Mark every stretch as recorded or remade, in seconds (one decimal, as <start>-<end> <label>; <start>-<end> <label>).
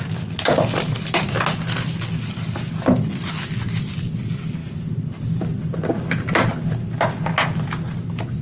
0.0-8.4 recorded